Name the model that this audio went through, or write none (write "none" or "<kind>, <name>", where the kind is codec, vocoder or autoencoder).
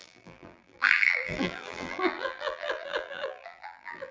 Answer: vocoder, BigVGAN v2